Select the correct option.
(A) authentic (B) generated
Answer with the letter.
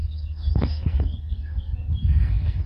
B